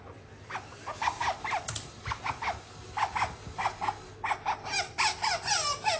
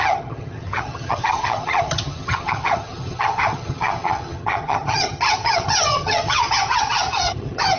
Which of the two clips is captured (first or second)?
first